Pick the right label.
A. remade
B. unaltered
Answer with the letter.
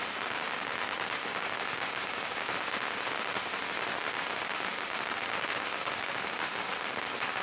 B